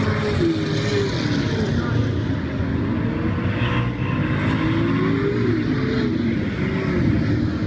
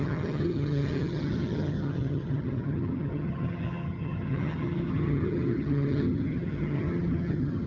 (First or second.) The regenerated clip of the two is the second